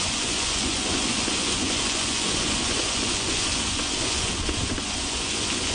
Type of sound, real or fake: fake